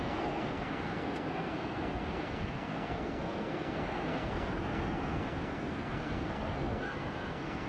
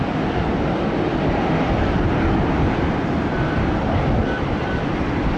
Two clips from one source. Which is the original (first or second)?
second